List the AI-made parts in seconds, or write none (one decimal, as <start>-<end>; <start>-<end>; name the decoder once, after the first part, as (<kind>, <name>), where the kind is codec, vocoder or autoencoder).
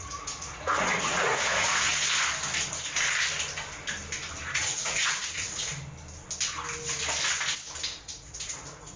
0.0-1.9 (vocoder, Vocos); 4.5-5.7; 8.0-9.0